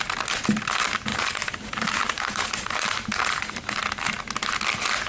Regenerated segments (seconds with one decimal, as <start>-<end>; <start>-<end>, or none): 1.1-4.2